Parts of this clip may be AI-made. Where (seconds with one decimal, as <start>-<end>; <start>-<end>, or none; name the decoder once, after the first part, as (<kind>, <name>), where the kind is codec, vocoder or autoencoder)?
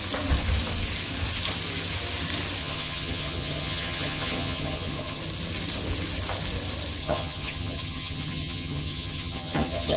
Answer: 2.6-5.2 (vocoder, HiFi-GAN); 7.0-10.0